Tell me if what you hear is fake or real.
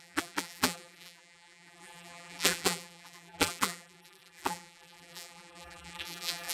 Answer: fake